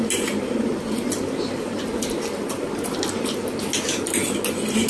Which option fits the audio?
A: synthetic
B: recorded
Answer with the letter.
B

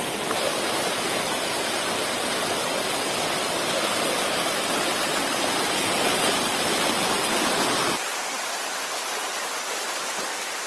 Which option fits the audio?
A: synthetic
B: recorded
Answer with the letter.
B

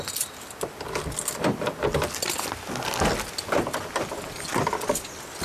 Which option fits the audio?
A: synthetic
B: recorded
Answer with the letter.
B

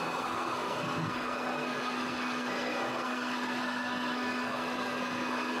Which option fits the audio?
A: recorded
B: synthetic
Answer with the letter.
B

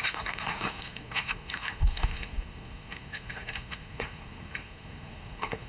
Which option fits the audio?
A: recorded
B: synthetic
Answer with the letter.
B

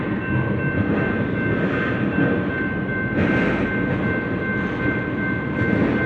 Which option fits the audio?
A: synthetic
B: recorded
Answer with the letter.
B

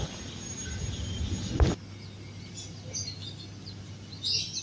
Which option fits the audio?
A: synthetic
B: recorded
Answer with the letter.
B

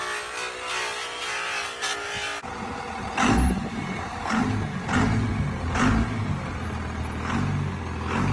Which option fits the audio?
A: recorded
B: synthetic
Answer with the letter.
A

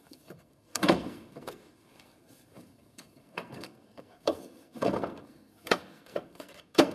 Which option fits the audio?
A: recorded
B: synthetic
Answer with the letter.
B